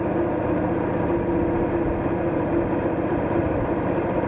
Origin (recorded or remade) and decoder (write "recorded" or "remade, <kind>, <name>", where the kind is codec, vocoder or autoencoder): recorded